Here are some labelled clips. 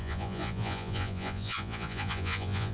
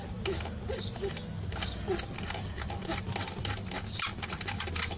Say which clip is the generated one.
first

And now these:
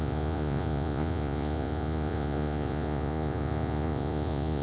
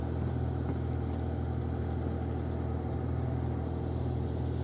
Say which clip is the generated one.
first